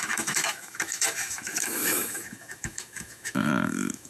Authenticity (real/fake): fake